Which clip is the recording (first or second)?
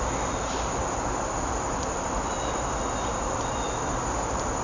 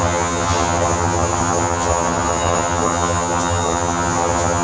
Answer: first